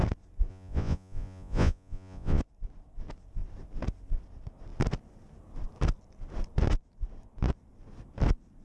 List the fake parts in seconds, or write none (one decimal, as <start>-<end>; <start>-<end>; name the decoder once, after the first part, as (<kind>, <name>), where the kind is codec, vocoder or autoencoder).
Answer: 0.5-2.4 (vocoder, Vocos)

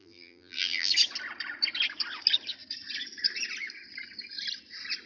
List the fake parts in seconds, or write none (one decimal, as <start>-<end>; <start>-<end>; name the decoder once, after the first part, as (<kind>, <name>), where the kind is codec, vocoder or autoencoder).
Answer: 0.0-0.9 (vocoder, BigVGAN v2)

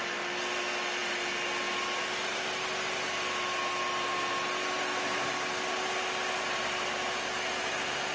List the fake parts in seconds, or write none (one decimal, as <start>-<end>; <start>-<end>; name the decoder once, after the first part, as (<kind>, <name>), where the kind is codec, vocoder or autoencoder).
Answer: none

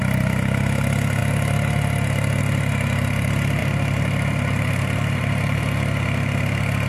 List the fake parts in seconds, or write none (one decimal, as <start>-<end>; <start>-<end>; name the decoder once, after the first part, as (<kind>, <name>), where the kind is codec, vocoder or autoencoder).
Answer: 3.6-5.6 (vocoder, BigVGAN v2)

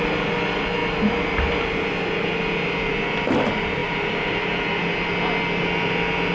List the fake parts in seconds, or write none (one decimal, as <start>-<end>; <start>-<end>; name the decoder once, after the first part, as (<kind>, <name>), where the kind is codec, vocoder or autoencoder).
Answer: none

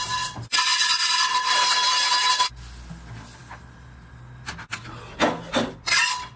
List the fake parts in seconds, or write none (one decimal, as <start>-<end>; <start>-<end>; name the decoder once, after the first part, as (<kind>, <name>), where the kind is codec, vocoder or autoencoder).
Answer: none